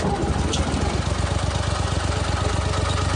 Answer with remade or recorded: recorded